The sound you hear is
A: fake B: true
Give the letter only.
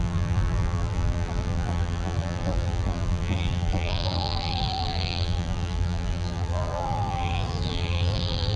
A